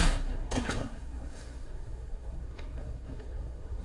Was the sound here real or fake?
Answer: fake